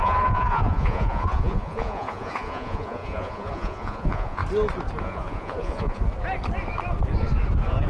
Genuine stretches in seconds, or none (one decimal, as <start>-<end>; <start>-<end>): 4.4-5.0; 6.0-7.9